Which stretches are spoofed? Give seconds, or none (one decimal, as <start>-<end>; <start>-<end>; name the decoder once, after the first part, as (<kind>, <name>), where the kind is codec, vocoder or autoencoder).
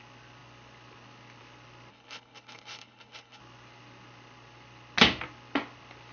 1.9-3.4 (codec, HILCodec)